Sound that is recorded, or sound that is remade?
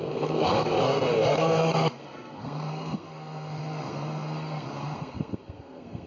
remade